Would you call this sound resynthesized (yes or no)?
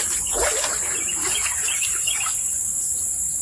yes